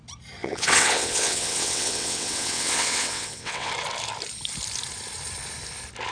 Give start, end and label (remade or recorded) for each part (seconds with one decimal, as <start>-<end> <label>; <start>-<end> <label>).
0.0-0.4 recorded; 0.4-3.7 remade; 3.7-6.1 recorded